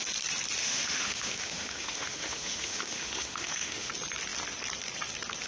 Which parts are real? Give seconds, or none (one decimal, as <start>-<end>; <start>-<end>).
0.0-0.6; 3.9-5.5